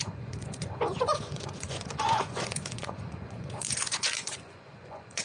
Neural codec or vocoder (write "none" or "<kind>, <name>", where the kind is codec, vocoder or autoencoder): vocoder, Vocos